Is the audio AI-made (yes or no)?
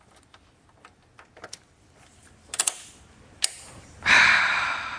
no